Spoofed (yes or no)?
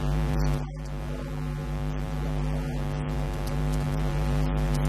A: yes